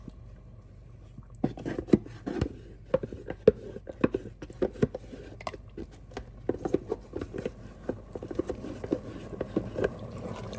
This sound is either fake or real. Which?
real